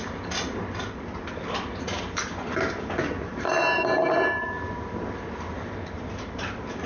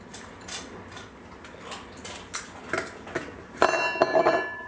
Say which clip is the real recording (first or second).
second